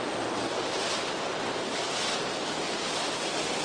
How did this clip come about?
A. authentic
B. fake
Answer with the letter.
A